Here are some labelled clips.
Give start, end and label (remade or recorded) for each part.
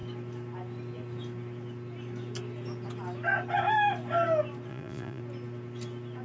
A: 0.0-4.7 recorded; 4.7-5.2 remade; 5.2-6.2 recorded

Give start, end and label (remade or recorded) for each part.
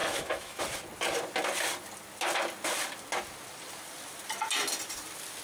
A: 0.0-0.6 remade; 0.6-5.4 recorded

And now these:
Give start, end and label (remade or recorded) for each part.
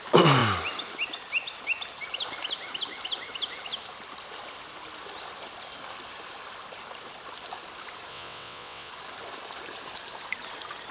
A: 0.0-8.1 recorded; 8.1-8.9 remade; 8.9-10.9 recorded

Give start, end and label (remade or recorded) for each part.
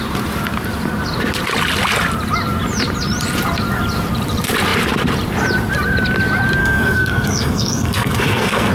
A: 0.0-6.6 recorded; 6.6-8.7 remade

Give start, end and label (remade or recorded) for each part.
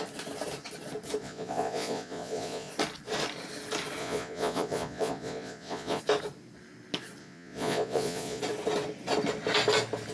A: 0.0-1.2 recorded; 1.2-2.7 remade; 2.7-4.0 recorded; 4.0-6.0 remade; 6.0-7.2 recorded; 7.2-8.4 remade; 8.4-10.1 recorded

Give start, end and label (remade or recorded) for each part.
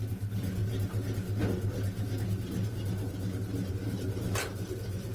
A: 0.0-0.6 remade; 0.6-3.7 recorded; 3.7-5.1 remade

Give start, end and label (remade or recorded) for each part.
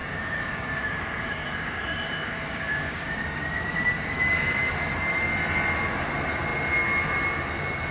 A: 0.0-4.7 remade; 4.7-7.9 recorded